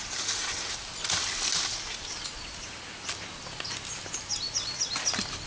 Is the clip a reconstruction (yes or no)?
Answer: no